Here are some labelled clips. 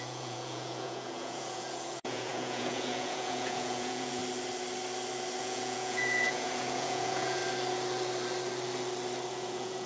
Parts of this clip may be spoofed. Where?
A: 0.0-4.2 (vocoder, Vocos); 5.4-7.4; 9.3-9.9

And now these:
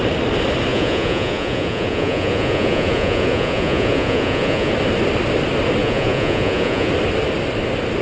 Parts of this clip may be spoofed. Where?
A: 0.7-4.7 (vocoder, Vocos); 5.8-6.9

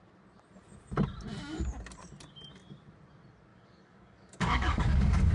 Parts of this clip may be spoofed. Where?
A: 3.5-5.3 (codec, DAC)

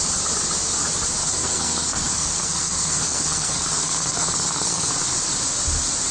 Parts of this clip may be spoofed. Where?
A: 1.2-4.9 (codec, SNAC)